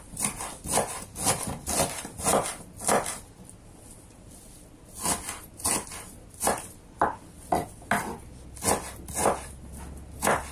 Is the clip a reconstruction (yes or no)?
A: no